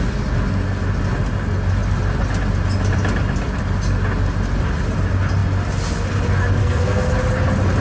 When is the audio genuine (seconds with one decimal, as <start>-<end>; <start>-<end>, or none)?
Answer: 0.0-6.6; 7.1-7.8